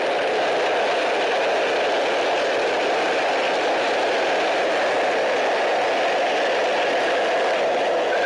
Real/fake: real